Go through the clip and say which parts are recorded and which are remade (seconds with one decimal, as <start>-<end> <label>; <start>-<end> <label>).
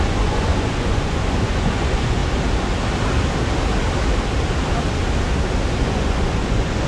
0.0-2.2 remade; 2.2-5.8 recorded; 5.8-6.9 remade